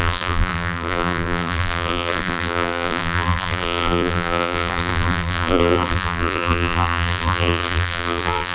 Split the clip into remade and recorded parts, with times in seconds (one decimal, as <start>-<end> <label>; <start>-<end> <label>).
0.0-8.5 remade

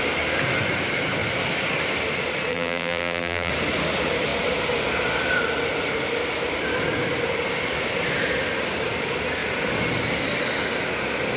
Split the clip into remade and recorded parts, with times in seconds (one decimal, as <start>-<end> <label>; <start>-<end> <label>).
0.0-2.5 recorded; 2.5-3.5 remade; 3.5-11.4 recorded